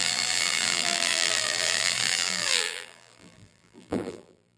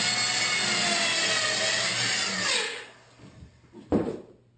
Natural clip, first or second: second